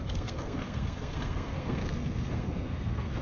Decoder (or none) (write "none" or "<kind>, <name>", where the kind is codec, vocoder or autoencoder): codec, SNAC